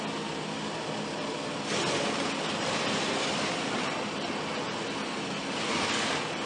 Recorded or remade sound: recorded